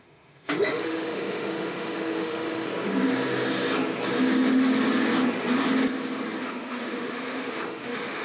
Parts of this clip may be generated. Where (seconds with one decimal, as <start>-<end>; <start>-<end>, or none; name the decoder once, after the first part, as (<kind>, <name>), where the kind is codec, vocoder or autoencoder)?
0.0-2.7 (autoencoder, DAC-VAE); 6.4-8.2